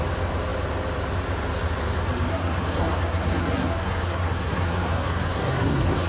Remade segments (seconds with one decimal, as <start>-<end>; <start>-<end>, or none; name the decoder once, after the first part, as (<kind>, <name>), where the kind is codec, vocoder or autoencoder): 2.3-6.1 (codec, SNAC)